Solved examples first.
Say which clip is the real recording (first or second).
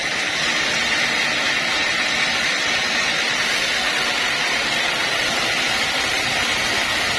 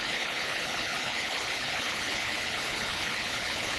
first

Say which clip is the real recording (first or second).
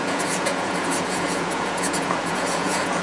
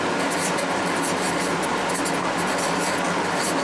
second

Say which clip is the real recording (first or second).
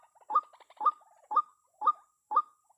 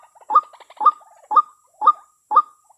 second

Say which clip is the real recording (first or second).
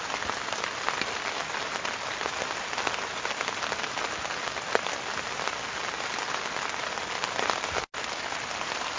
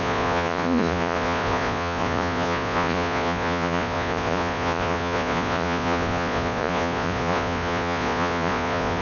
first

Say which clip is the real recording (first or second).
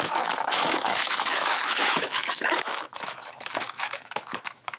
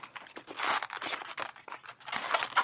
second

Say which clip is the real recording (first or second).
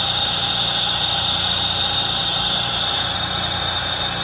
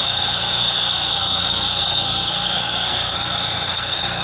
first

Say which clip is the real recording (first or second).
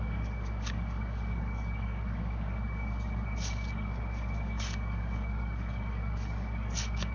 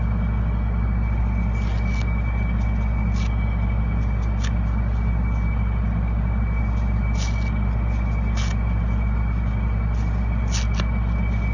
second